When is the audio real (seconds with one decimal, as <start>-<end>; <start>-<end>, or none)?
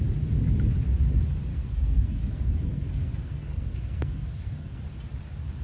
0.0-1.5; 4.8-5.6